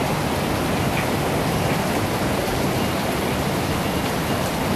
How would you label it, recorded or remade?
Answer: recorded